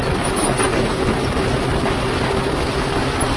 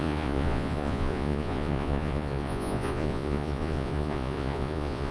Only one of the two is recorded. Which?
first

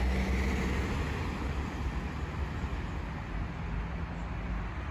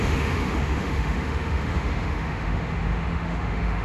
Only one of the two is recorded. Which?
first